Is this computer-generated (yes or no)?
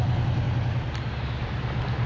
no